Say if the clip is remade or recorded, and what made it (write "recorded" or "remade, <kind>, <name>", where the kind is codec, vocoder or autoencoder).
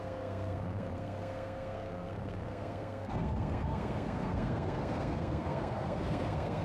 remade, codec, SNAC